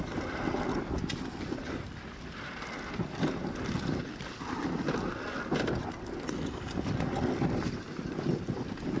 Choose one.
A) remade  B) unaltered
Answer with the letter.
B